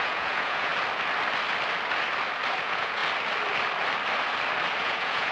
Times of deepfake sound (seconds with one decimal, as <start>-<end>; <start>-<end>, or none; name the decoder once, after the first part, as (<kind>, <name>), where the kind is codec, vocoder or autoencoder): 0.0-0.7 (vocoder, Vocos); 2.6-3.0; 4.8-5.3